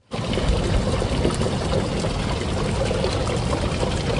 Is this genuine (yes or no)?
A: yes